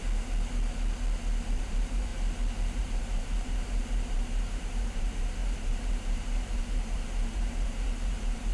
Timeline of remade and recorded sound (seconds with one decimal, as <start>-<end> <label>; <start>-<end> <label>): 0.0-1.5 recorded; 1.5-2.1 remade; 2.1-2.8 recorded; 2.8-8.5 remade